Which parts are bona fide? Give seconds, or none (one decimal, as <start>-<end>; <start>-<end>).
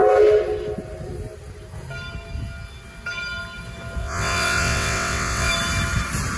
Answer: 0.0-4.0; 5.5-6.4